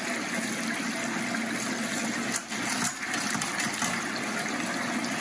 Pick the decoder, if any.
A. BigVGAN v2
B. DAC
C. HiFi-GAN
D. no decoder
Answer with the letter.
D